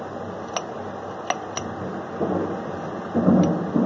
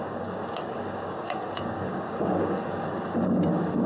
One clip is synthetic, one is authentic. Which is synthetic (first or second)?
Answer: second